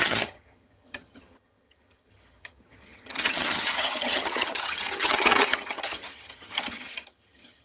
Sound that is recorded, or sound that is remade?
remade